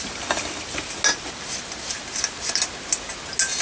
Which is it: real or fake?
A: real